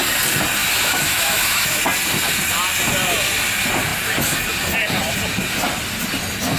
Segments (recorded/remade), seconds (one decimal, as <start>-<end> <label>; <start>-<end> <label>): 0.0-0.6 recorded; 0.6-1.8 remade; 1.8-6.6 recorded